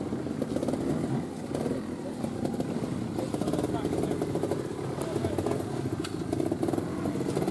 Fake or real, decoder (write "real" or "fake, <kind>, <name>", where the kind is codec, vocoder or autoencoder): real